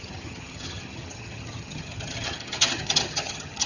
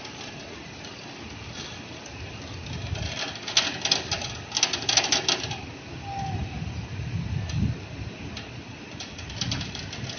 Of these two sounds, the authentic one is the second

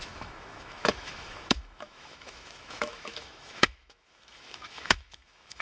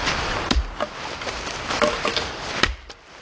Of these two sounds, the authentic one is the second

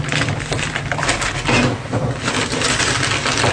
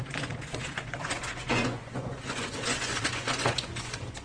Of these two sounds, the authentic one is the first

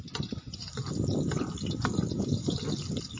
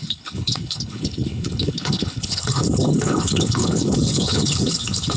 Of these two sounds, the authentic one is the first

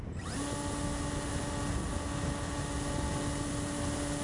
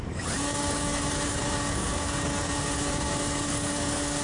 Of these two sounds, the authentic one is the first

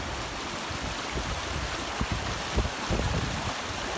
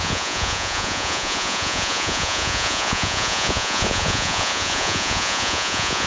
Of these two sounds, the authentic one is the first